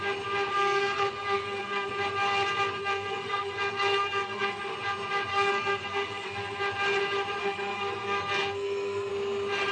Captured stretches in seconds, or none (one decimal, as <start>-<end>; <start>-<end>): 0.0-0.5; 1.9-2.8; 4.6-5.3; 6.6-7.4; 9.1-9.7